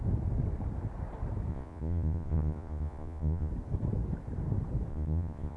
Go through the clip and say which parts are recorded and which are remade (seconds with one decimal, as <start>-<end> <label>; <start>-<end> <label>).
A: 0.0-1.5 recorded; 1.5-3.5 remade; 3.5-4.9 recorded; 4.9-5.6 remade